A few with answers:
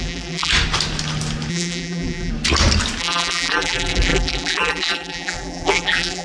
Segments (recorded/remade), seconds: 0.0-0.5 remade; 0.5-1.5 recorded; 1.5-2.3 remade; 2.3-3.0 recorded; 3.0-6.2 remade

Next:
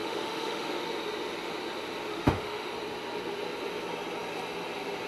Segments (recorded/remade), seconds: 0.0-0.8 remade; 0.8-2.1 recorded; 2.1-2.7 remade; 2.7-5.1 recorded

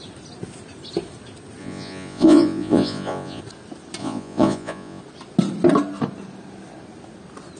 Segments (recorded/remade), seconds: 0.0-1.6 recorded; 1.6-3.4 remade; 3.4-4.0 recorded; 4.0-5.0 remade; 5.0-7.6 recorded

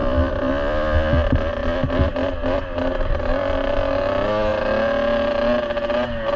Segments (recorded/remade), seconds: 0.0-0.5 remade; 0.5-1.6 recorded; 1.6-3.2 remade; 3.2-6.4 recorded